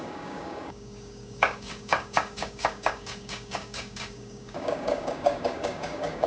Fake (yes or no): yes